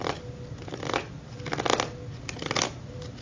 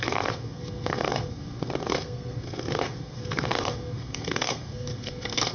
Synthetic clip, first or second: second